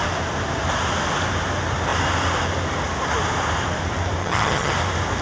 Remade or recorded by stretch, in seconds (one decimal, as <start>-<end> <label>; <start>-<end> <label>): 0.0-4.2 recorded; 4.2-4.7 remade; 4.7-5.2 recorded